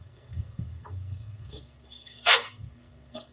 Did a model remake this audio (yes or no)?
yes